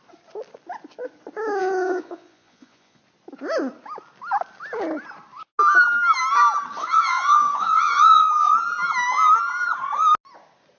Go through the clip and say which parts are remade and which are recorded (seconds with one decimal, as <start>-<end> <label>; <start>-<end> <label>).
0.0-1.6 recorded; 1.6-3.0 remade; 3.0-6.8 recorded; 6.8-8.3 remade; 8.3-10.8 recorded